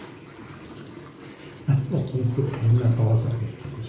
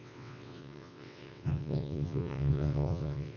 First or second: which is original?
first